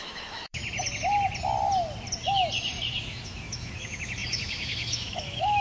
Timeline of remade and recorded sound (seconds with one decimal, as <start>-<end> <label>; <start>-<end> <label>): 0.0-0.6 remade; 0.6-3.0 recorded; 3.0-5.6 remade